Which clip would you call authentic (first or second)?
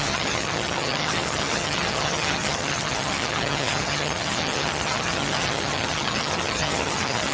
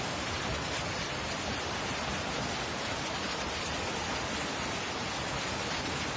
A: second